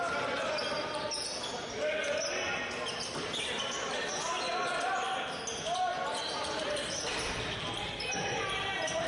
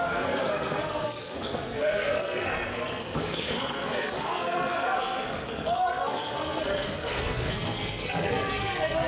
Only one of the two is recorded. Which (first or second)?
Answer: first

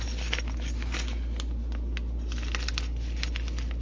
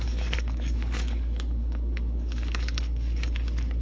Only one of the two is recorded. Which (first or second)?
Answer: first